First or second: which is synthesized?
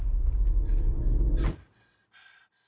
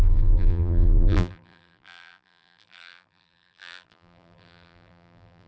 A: second